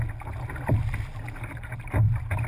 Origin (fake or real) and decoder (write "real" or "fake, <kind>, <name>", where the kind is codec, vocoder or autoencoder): real